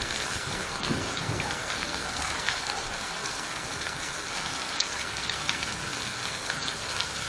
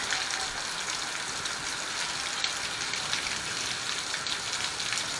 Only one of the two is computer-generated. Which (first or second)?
first